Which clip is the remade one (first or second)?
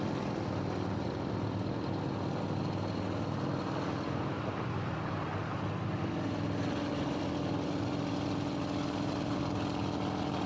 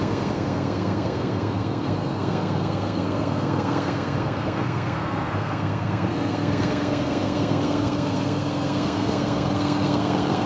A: second